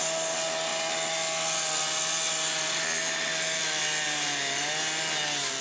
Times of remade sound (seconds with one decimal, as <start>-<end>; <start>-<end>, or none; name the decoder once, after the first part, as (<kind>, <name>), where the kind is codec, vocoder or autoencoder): none